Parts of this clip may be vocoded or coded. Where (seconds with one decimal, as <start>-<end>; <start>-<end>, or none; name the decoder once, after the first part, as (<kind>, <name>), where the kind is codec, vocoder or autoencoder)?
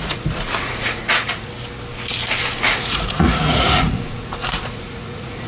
0.0-1.5 (vocoder, Vocos); 2.7-5.5